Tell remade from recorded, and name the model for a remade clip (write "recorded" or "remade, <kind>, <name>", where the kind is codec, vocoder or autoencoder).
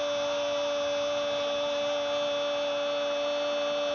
recorded